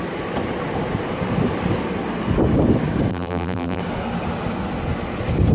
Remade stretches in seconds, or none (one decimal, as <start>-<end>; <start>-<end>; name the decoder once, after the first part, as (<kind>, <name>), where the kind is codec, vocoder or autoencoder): 3.1-3.8 (vocoder, BigVGAN v2)